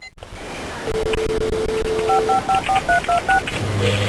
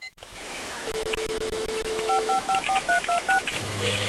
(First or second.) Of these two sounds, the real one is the first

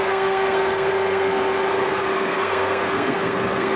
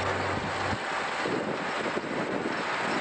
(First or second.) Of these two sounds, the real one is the second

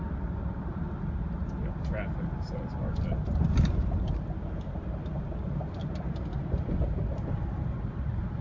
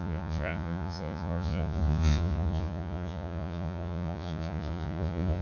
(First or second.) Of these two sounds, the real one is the first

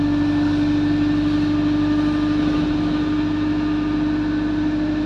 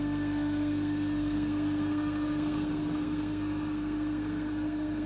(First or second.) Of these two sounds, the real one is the first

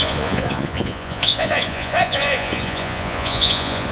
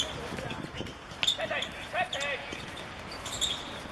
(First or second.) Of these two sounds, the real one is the second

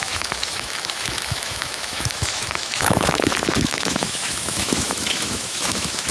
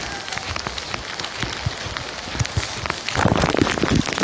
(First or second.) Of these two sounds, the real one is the second